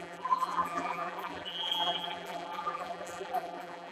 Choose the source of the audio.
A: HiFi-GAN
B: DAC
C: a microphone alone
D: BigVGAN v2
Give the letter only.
D